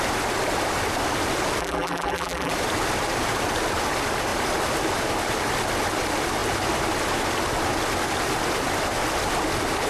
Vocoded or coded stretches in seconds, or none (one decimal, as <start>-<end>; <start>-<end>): 1.6-2.5